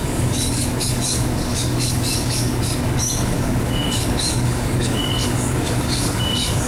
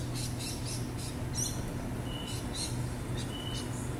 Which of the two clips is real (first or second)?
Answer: second